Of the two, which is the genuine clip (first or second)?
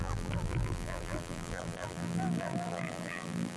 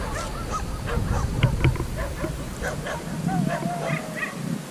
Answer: second